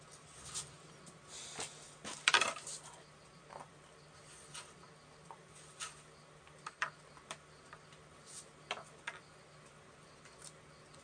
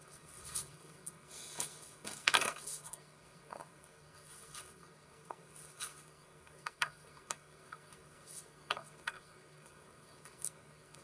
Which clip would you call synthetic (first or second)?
second